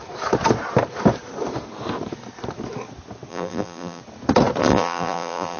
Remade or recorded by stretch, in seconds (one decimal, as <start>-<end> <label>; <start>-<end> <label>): 0.0-3.3 recorded; 3.3-4.0 remade; 4.0-4.6 recorded; 4.6-5.6 remade